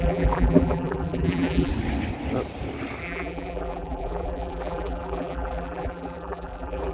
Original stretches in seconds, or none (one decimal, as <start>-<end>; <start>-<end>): 1.7-3.0